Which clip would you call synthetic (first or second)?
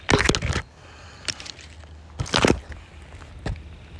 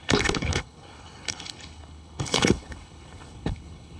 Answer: second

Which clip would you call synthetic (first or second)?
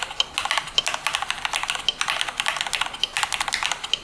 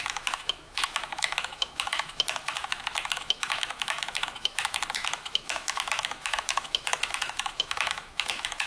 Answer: second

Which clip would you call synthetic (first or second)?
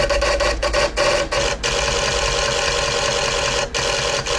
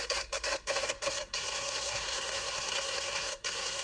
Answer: second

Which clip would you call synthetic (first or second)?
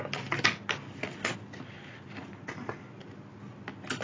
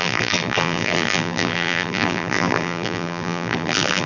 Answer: second